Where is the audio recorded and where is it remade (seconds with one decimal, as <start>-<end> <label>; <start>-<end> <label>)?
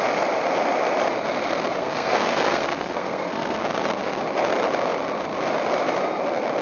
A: 0.0-1.8 recorded; 1.8-3.6 remade; 3.6-6.6 recorded